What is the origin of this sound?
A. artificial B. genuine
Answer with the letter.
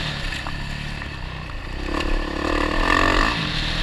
B